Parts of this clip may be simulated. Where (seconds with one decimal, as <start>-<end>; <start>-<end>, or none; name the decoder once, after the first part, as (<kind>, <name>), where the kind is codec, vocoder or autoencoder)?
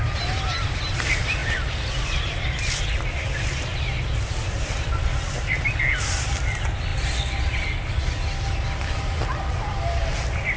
none